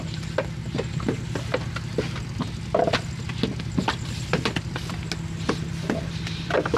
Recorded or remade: recorded